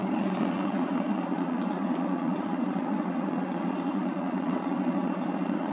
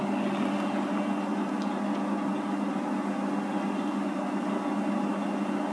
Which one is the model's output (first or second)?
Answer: first